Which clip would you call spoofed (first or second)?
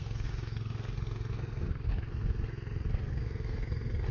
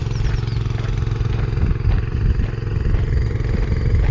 first